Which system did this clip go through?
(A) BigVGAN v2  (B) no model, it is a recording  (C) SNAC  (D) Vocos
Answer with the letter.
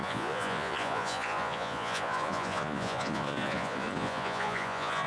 D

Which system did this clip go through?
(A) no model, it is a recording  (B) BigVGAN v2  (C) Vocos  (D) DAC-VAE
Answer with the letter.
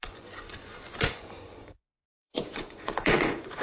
C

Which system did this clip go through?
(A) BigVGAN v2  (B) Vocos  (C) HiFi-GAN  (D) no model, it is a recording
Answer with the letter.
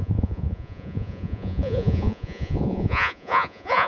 B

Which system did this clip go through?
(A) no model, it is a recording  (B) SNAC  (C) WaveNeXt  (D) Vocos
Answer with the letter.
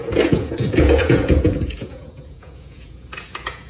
D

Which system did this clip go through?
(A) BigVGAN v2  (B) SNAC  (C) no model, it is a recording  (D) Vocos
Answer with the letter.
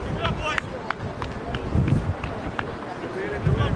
C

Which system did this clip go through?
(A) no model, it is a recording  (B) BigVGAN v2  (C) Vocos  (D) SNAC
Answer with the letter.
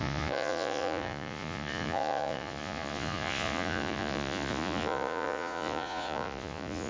C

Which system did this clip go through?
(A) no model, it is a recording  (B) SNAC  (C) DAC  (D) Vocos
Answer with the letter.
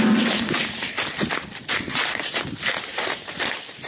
A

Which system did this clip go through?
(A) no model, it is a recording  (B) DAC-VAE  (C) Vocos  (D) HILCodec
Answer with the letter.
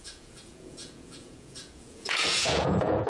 C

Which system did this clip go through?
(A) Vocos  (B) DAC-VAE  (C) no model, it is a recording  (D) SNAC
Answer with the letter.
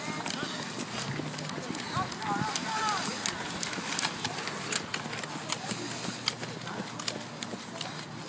C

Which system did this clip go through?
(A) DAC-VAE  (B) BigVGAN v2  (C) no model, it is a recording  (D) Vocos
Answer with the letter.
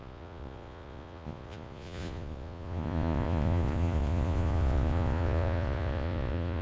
D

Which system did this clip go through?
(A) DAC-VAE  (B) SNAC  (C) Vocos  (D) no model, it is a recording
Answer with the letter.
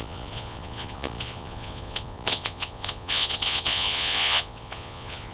C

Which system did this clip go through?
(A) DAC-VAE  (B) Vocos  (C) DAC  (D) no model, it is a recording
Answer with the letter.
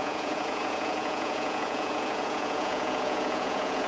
B